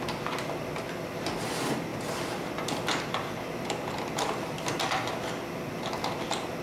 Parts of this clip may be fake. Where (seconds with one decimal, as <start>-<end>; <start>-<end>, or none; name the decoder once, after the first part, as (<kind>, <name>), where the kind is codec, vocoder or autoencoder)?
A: none